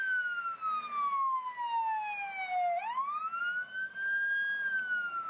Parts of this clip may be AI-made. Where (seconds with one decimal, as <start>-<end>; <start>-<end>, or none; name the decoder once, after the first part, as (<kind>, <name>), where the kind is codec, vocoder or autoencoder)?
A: none